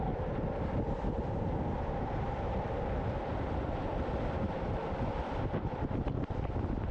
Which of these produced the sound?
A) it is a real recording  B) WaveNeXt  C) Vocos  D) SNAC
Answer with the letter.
A